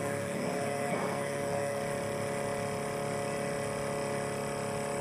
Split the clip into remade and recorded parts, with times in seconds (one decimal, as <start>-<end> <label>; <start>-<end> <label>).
0.0-1.8 remade; 1.8-5.0 recorded